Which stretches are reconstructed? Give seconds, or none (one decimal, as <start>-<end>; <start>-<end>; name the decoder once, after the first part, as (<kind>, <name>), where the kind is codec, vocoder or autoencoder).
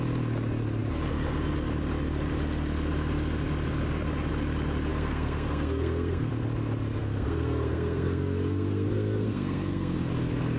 4.9-6.3 (codec, SNAC); 7.0-10.1